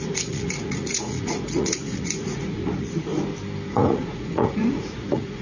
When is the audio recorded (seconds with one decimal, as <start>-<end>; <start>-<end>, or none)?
3.1-3.7